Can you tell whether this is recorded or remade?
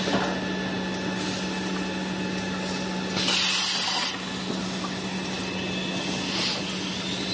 recorded